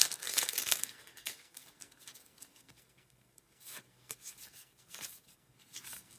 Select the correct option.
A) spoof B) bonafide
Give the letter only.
A